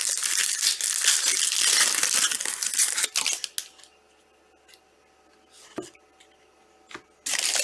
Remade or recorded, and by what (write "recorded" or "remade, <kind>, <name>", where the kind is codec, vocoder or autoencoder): recorded